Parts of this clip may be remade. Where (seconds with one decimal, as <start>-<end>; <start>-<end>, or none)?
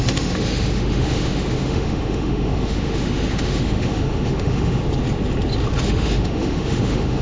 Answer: 0.0-4.8; 5.8-7.2